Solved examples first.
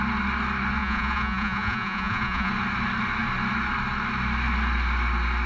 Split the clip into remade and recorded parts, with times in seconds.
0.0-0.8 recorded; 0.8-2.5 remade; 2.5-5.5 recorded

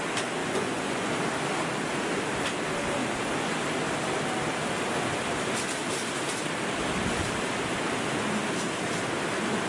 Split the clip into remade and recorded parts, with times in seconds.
0.0-0.4 recorded; 0.4-1.1 remade; 1.1-9.7 recorded